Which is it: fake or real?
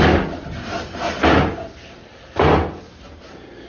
real